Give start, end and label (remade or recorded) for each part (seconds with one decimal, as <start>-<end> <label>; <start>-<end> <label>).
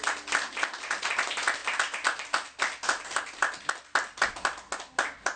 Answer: 0.0-5.4 recorded